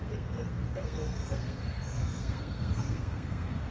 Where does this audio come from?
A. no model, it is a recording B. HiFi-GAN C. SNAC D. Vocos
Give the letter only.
C